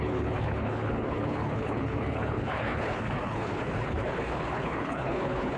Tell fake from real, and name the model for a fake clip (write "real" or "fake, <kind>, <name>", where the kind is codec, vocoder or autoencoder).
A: fake, codec, HILCodec